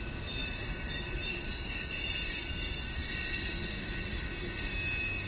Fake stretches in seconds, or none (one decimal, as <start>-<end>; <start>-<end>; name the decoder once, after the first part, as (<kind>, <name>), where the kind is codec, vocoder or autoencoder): 0.4-3.6 (vocoder, BigVGAN v2)